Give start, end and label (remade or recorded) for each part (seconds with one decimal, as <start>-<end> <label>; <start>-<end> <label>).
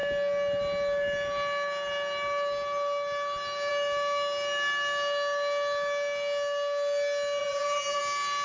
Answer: 0.0-7.4 recorded; 7.4-8.0 remade; 8.0-8.4 recorded